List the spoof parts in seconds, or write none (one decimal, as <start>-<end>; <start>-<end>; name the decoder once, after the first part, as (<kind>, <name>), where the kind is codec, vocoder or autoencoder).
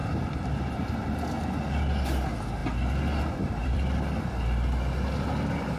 0.0-0.9 (vocoder, BigVGAN v2); 3.6-4.4